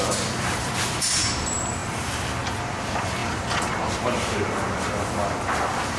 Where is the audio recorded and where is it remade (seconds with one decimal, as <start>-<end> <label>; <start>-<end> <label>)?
0.0-6.0 remade